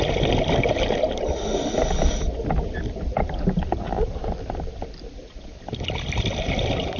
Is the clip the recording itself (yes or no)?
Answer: yes